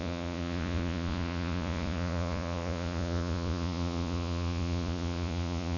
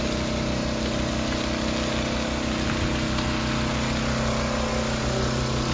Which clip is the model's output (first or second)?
first